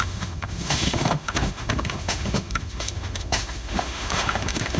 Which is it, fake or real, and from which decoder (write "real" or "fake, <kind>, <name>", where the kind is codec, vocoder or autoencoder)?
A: fake, autoencoder, DAC-VAE